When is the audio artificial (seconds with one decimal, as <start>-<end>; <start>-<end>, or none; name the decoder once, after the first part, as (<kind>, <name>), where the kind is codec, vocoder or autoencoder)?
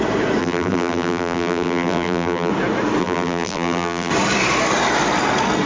0.4-2.5 (vocoder, BigVGAN v2); 3.0-4.1